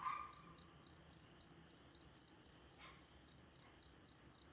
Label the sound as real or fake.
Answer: fake